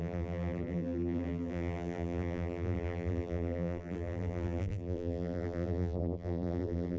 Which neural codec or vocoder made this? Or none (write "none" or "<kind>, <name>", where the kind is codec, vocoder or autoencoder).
vocoder, BigVGAN v2